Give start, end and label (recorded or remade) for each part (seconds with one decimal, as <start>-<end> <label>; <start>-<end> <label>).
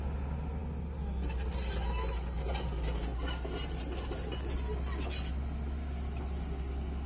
0.0-7.1 recorded